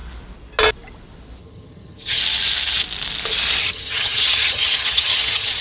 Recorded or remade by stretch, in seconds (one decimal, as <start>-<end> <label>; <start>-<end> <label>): 0.0-1.4 recorded; 1.4-2.2 remade; 2.2-3.6 recorded; 3.6-5.6 remade